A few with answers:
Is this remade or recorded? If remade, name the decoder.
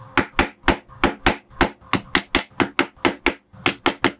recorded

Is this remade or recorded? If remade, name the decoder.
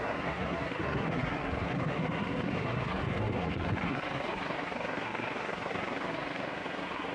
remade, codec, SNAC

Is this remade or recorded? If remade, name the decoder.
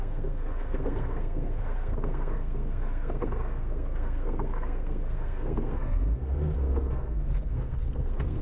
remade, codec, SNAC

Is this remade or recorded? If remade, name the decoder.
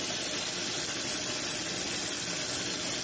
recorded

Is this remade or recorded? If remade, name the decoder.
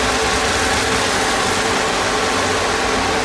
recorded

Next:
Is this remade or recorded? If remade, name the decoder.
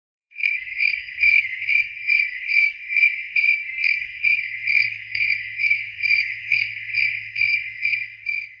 remade, codec, SNAC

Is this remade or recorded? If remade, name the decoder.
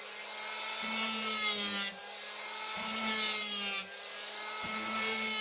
recorded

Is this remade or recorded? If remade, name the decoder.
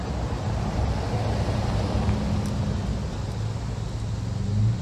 recorded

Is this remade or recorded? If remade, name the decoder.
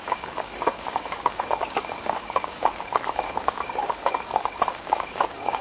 remade, codec, DAC